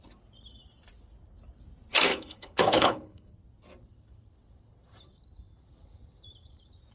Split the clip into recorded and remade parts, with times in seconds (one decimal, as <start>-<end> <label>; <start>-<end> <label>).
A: 0.0-2.1 recorded; 2.1-3.3 remade; 3.3-6.9 recorded